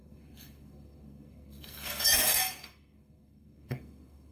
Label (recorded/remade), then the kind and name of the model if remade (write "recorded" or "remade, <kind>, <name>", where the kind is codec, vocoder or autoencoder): remade, codec, SNAC